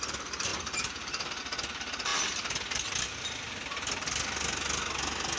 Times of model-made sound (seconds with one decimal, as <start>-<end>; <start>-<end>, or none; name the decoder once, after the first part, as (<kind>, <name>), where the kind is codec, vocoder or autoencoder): none